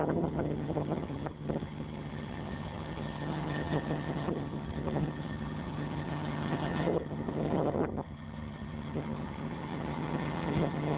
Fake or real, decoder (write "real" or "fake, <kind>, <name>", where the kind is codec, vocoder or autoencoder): fake, vocoder, HiFi-GAN